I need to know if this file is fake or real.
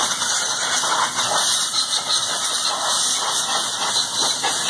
real